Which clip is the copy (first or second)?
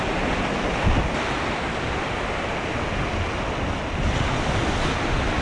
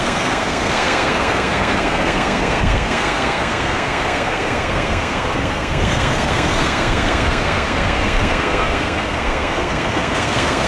second